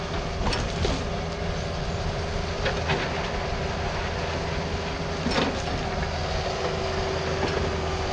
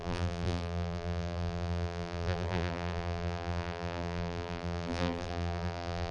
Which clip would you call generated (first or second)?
second